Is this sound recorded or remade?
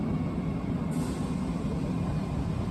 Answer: recorded